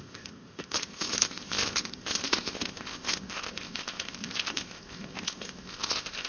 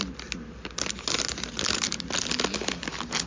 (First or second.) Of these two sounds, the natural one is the second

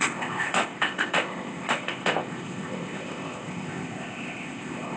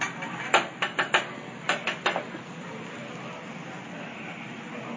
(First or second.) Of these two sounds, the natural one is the second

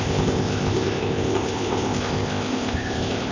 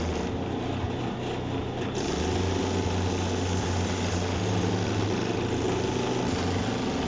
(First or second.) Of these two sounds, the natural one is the second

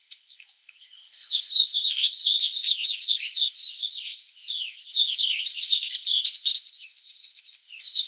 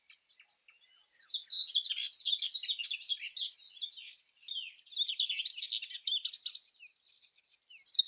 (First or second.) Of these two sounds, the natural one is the second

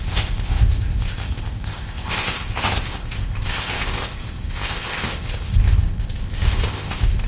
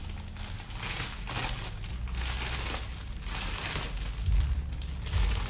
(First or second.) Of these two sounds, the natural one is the second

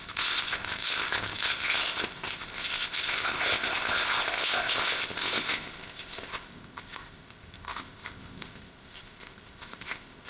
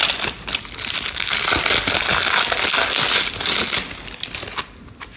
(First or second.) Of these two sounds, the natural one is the second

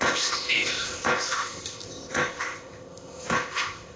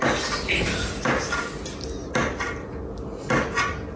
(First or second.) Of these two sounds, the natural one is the second